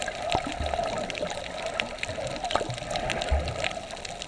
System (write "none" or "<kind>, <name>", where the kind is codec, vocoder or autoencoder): none